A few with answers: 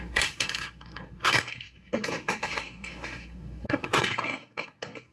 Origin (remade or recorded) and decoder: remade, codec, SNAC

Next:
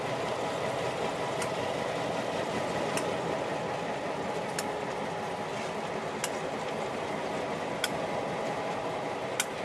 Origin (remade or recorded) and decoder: recorded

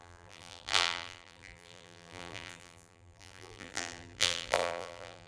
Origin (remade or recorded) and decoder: remade, vocoder, BigVGAN v2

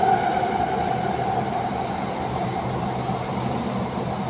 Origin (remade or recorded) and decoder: recorded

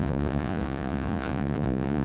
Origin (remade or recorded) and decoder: remade, vocoder, Vocos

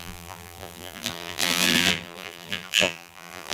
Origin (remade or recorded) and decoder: remade, vocoder, BigVGAN v2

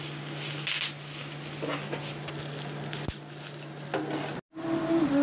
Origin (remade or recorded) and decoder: recorded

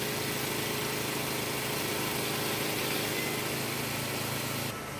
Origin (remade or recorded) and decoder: recorded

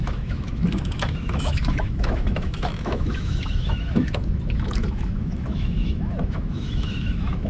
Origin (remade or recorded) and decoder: remade, autoencoder, DAC-VAE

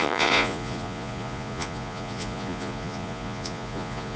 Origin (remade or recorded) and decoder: remade, vocoder, Vocos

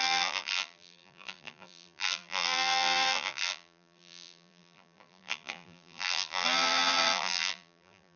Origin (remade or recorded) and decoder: remade, vocoder, BigVGAN v2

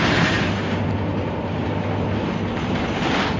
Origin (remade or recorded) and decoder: recorded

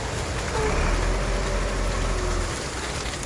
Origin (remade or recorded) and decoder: recorded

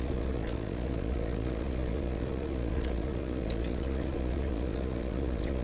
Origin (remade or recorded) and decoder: remade, vocoder, Vocos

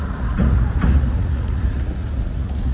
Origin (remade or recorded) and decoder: remade, vocoder, Vocos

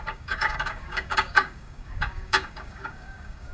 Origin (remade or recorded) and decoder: remade, codec, DAC